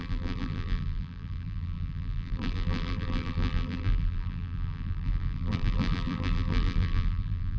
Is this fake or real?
fake